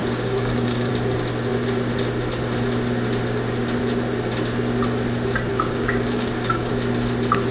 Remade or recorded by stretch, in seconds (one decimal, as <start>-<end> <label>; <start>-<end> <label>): 0.0-0.9 remade; 0.9-5.5 recorded; 5.5-6.7 remade; 6.7-7.5 recorded